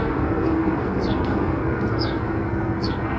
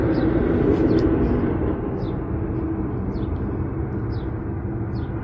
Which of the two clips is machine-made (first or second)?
first